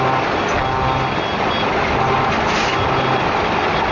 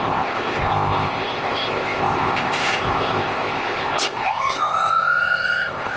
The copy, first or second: second